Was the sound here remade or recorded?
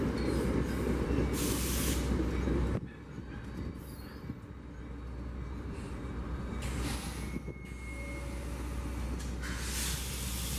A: recorded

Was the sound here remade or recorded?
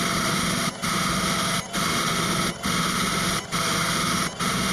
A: recorded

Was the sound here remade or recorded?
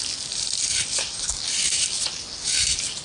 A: recorded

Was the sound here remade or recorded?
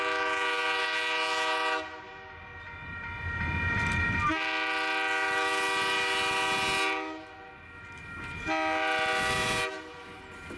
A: recorded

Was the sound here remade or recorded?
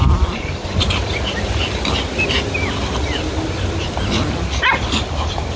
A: recorded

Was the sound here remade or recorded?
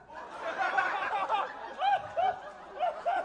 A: recorded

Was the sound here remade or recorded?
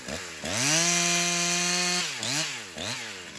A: recorded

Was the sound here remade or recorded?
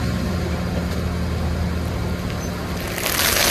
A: recorded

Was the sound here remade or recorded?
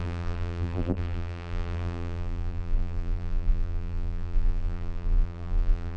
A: remade